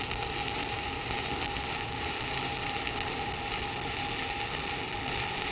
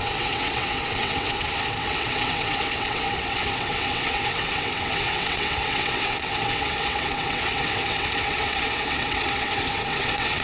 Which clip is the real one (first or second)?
first